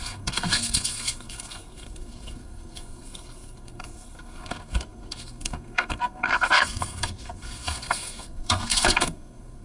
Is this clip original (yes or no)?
no